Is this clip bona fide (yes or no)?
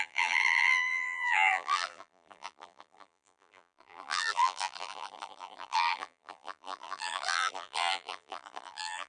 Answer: no